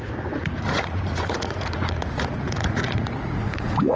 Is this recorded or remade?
remade